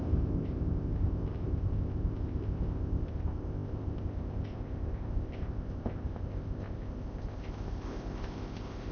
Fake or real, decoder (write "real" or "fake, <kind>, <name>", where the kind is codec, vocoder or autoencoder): fake, codec, ZipCodec